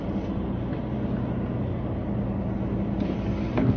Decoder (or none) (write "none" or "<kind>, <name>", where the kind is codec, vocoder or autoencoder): none